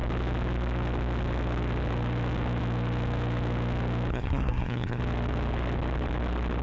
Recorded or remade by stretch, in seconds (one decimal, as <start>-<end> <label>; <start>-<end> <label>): 0.0-4.1 recorded; 4.1-5.0 remade; 5.0-6.6 recorded